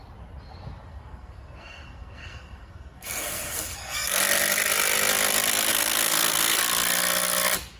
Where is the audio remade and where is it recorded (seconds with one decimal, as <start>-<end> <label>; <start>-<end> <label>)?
0.0-0.9 recorded; 0.9-4.2 remade; 4.2-5.7 recorded; 5.7-6.6 remade; 6.6-7.8 recorded